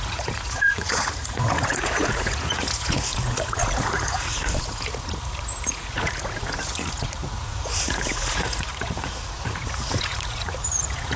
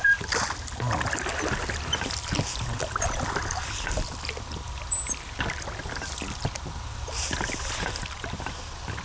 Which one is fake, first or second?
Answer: first